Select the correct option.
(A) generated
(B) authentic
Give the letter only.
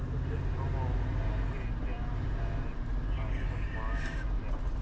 B